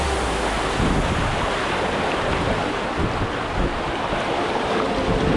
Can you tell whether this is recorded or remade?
recorded